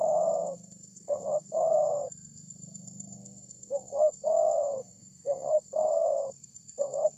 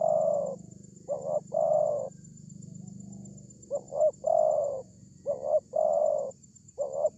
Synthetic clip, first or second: first